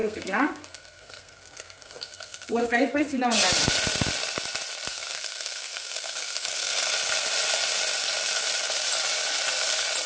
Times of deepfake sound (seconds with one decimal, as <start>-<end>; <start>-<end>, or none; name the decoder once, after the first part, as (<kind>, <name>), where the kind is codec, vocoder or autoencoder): 0.0-3.2 (codec, SNAC); 4.9-6.9